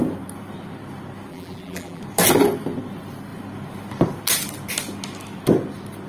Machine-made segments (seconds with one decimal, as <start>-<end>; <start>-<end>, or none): 1.3-2.0